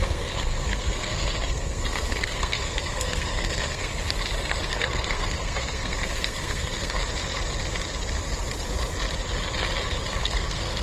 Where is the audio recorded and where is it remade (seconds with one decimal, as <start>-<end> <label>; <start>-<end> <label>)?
0.0-3.9 remade; 3.9-4.6 recorded; 4.6-7.0 remade; 7.0-10.2 recorded; 10.2-10.8 remade